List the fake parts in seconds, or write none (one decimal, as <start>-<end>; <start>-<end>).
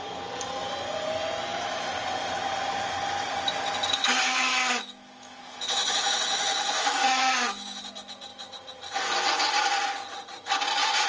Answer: 4.0-7.8